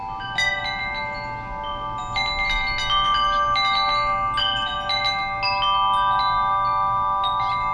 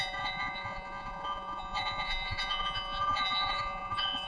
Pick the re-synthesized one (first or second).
second